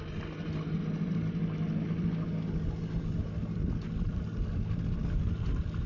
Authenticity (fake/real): real